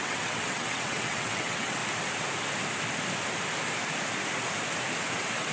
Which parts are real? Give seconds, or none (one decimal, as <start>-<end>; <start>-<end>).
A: 1.8-5.1